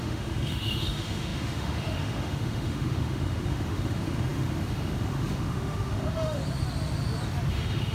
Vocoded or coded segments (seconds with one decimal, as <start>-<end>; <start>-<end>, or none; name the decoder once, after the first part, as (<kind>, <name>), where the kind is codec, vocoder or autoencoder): 0.0-6.4 (autoencoder, DAC-VAE); 7.5-7.9